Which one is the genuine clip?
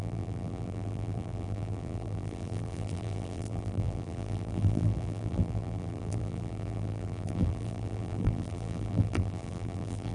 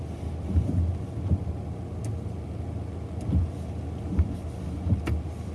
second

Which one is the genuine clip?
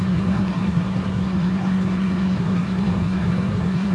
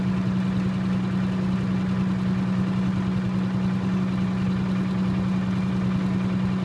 second